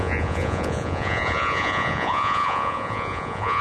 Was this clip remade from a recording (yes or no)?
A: yes